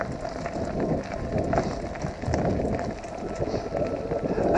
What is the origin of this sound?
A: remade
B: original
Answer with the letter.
B